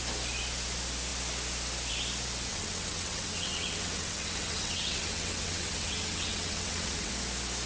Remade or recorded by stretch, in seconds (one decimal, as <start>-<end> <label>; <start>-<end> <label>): 0.0-2.5 recorded; 2.5-7.1 remade; 7.1-7.7 recorded